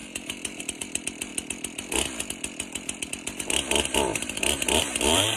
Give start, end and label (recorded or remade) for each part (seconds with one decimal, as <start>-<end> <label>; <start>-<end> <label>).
0.0-1.3 remade; 1.3-3.4 recorded; 3.4-5.4 remade